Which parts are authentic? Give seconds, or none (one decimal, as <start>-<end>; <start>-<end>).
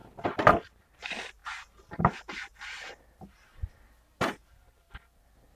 0.0-0.5; 1.4-4.8